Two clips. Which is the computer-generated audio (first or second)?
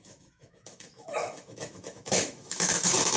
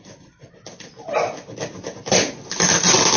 first